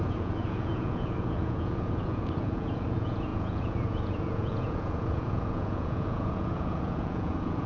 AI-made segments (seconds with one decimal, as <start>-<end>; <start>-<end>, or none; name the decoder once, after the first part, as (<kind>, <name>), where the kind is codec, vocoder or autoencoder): 0.0-7.7 (vocoder, Vocos)